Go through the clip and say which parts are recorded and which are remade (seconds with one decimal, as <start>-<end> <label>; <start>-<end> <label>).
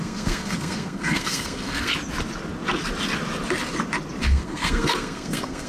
0.0-1.9 remade; 1.9-4.2 recorded; 4.2-5.7 remade